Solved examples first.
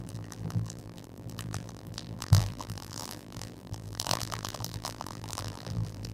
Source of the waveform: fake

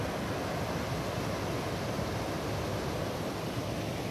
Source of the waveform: real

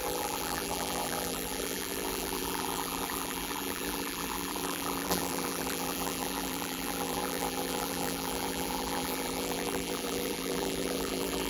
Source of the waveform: fake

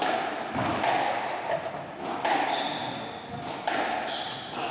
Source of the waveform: real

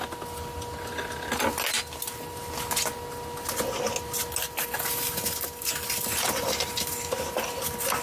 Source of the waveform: real